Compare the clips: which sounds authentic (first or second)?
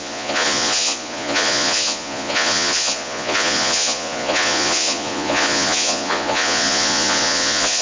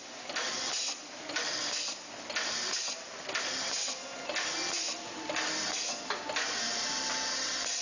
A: second